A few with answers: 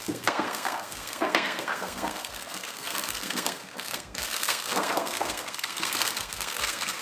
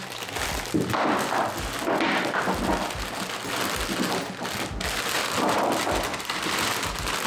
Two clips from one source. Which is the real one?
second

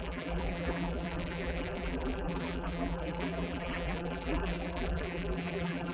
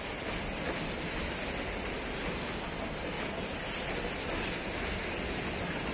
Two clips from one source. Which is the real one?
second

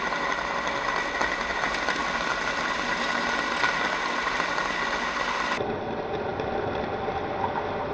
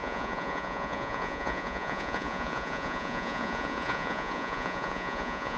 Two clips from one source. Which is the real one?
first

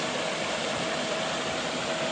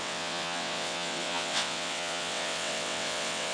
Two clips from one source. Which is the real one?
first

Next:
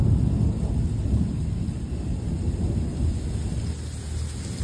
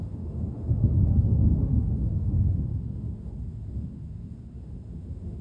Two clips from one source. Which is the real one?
first